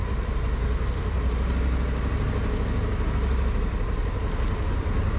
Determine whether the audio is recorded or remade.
recorded